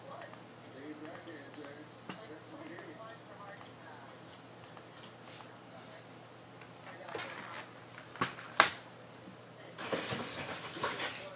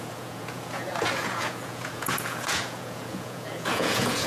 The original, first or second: first